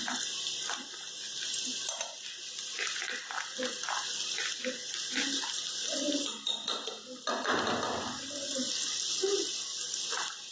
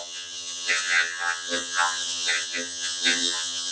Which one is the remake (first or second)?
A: second